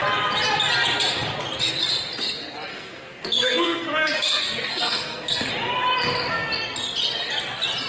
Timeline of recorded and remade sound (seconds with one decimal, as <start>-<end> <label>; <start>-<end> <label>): 0.0-2.7 recorded; 2.7-5.5 remade; 5.5-7.9 recorded